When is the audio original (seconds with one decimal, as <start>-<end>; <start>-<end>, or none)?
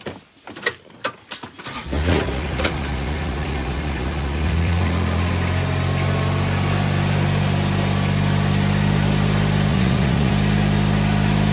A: 0.0-1.8; 5.3-9.7; 10.3-11.5